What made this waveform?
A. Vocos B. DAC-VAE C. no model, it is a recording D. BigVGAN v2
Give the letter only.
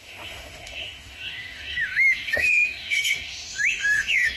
B